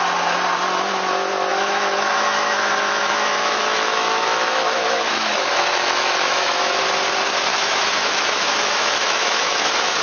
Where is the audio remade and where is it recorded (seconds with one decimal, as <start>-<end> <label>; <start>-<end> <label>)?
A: 0.0-1.5 recorded; 1.5-6.8 remade; 6.8-7.5 recorded; 7.5-10.0 remade